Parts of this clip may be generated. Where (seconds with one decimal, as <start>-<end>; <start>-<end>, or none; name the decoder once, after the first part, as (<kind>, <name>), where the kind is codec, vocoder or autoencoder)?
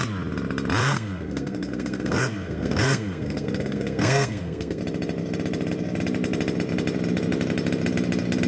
0.8-4.8 (codec, SNAC)